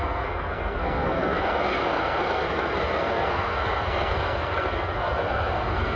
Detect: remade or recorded remade